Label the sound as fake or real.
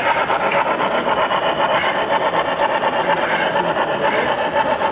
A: real